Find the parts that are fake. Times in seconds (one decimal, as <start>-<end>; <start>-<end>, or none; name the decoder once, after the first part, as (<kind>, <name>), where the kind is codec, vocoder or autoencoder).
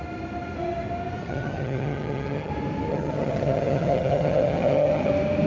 1.2-2.5 (vocoder, HiFi-GAN); 2.9-5.1